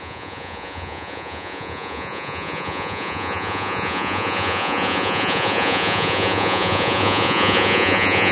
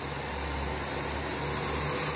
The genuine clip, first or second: second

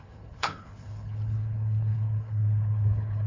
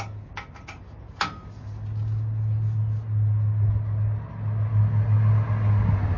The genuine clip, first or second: second